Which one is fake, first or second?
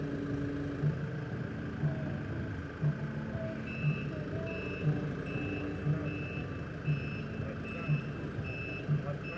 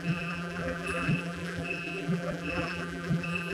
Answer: second